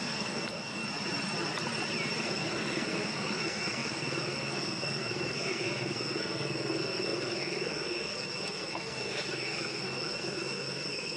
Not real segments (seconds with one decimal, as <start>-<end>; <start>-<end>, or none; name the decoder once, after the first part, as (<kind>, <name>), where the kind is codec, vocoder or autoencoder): 0.0-0.8 (codec, SNAC); 2.2-11.2